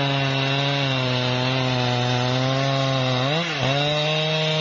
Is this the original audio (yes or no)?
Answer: yes